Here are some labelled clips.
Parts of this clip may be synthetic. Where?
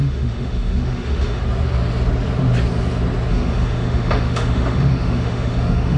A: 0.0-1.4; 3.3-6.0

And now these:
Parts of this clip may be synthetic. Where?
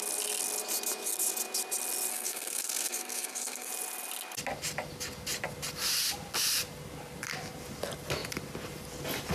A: 2.1-3.7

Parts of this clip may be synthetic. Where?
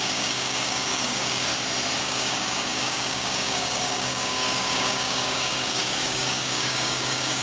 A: 0.0-1.5; 2.0-7.4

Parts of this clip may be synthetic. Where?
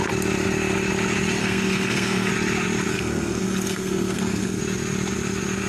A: 1.4-2.3; 2.9-4.6